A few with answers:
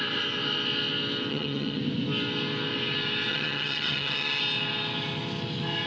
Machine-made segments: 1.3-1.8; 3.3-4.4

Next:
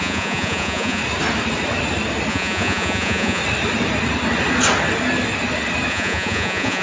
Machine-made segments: 0.0-1.0; 2.3-3.4; 5.9-6.8